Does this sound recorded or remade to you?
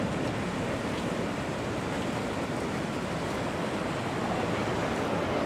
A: recorded